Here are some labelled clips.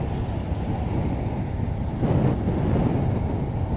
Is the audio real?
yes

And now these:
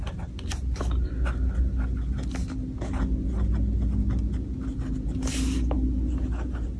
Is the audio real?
yes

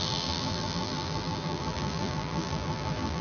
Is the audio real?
no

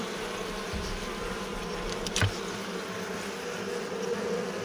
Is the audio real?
yes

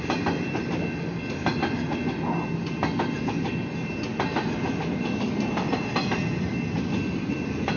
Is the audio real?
yes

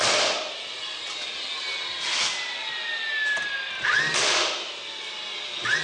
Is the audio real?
yes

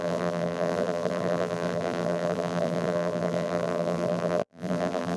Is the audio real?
no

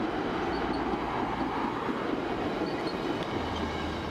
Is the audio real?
yes